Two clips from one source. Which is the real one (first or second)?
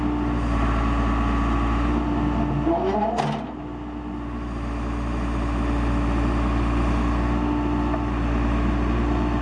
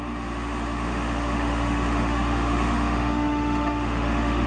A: first